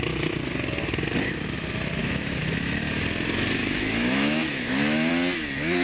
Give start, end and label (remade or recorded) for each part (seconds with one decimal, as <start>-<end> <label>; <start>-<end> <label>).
0.0-2.0 recorded; 2.0-2.8 remade; 2.8-3.6 recorded; 3.6-5.1 remade; 5.1-5.8 recorded